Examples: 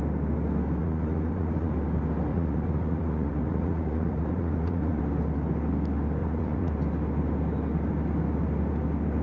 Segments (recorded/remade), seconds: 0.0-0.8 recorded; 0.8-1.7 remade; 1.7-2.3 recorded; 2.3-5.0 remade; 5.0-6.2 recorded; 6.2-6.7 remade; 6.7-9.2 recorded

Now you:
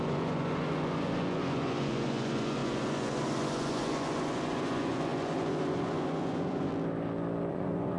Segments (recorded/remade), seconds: 0.0-6.7 remade; 6.7-7.5 recorded; 7.5-8.0 remade